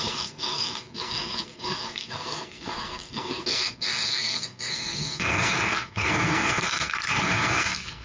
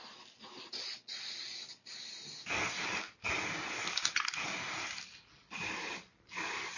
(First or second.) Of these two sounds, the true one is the second